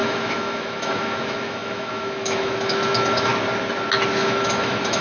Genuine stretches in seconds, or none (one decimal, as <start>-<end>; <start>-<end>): 3.3-4.2